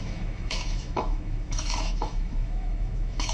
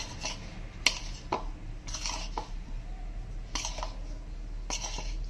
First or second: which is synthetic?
first